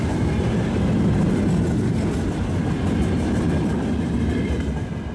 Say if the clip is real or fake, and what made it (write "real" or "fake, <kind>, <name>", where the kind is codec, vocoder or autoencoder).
real